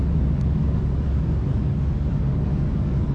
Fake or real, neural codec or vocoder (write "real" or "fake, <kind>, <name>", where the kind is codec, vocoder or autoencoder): fake, codec, DAC